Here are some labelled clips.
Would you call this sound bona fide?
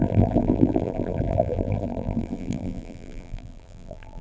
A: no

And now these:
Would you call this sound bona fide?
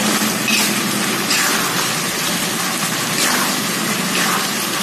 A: yes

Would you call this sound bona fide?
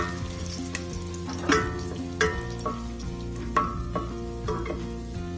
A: yes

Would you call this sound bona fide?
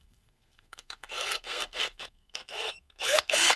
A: no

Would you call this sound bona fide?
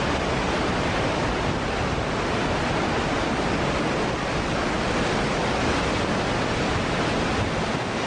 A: yes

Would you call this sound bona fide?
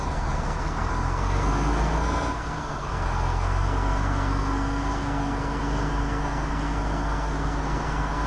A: no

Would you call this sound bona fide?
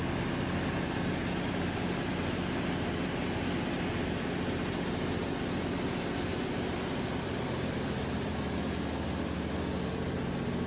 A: yes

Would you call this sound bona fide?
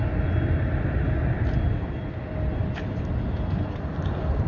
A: yes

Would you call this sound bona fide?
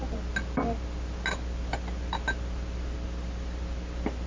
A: yes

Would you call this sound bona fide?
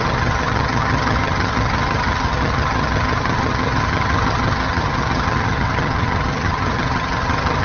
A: no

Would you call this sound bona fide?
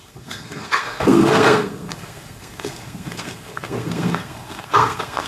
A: no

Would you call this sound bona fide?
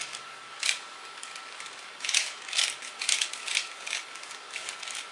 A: no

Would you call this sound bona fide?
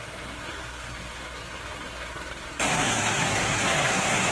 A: no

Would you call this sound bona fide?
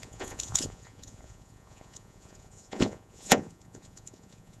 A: no